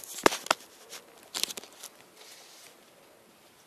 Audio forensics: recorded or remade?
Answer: recorded